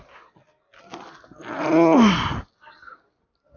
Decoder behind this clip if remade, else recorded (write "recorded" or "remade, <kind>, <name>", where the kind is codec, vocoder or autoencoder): recorded